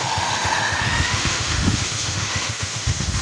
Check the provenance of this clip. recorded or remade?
remade